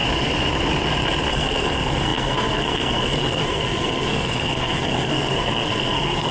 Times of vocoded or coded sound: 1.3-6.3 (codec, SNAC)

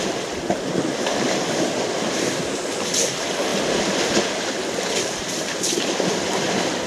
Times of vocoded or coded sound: none